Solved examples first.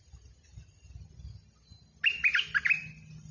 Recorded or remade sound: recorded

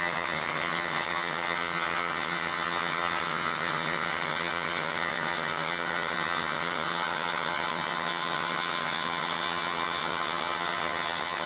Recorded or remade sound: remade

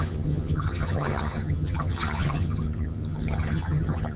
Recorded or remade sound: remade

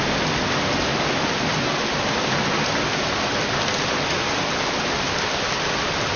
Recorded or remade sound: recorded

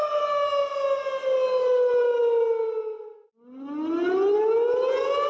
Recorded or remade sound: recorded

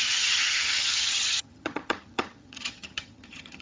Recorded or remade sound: remade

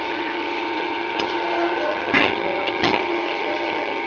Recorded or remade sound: remade